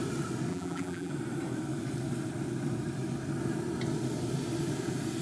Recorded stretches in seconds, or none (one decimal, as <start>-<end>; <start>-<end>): 0.0-0.5; 1.1-5.2